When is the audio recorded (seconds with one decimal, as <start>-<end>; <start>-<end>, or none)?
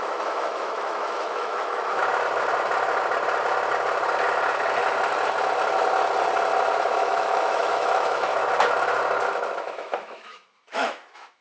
2.0-7.0; 8.3-9.5